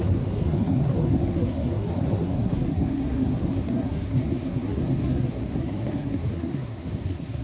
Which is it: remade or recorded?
remade